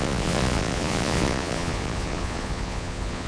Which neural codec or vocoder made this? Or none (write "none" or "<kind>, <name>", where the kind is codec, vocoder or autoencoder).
vocoder, Vocos